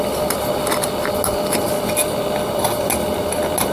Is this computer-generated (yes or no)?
no